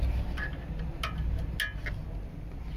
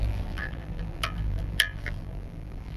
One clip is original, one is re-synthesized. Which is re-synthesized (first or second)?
second